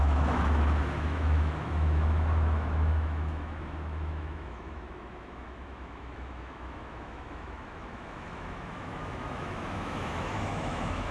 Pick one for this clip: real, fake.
fake